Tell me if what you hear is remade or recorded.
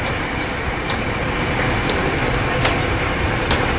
remade